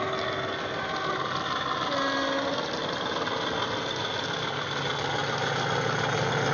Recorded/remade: recorded